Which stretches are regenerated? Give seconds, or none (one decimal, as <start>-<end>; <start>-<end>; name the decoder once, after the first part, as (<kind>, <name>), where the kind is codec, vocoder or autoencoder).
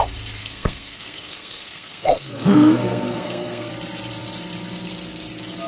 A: 0.4-3.7 (codec, SNAC)